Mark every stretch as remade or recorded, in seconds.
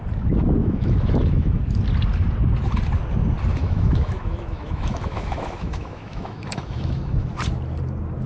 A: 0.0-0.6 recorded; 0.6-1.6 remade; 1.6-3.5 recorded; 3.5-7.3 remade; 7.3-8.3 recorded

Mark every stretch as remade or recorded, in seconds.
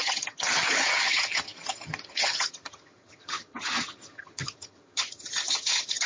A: 0.0-6.1 remade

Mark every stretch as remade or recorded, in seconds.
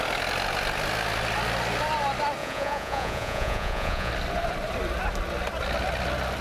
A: 0.0-2.4 recorded; 2.4-4.1 remade; 4.1-6.4 recorded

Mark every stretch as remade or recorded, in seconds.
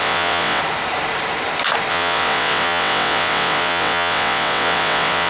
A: 0.0-0.6 remade; 0.6-1.9 recorded; 1.9-5.3 remade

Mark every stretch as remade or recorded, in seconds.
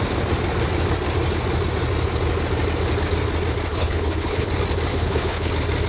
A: 0.0-3.7 recorded; 3.7-4.5 remade; 4.5-4.9 recorded; 4.9-5.5 remade; 5.5-5.9 recorded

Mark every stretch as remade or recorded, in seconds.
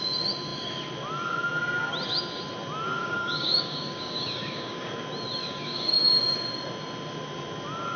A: 0.0-3.0 recorded; 3.0-5.0 remade; 5.0-5.4 recorded; 5.4-6.1 remade; 6.1-8.0 recorded